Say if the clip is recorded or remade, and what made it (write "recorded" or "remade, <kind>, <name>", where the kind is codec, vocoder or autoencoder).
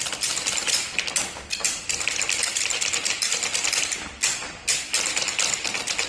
recorded